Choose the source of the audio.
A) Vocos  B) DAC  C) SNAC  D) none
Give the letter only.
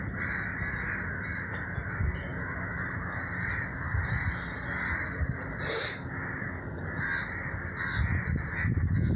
D